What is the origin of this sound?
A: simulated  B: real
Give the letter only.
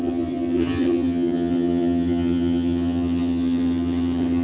A